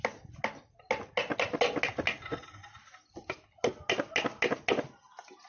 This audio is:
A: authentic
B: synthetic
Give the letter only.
A